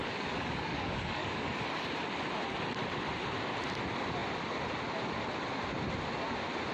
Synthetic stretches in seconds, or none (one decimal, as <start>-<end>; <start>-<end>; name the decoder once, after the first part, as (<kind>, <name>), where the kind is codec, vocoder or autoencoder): 0.0-1.7 (codec, DAC)